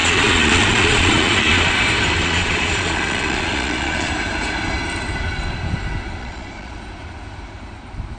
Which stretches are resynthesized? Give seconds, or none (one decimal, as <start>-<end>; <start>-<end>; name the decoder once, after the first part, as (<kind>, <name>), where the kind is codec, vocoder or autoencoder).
0.0-1.7 (vocoder, Vocos); 2.2-4.1; 6.2-6.7